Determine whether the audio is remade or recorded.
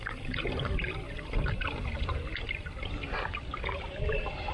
recorded